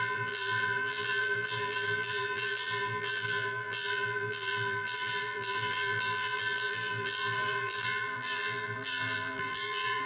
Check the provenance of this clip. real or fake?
fake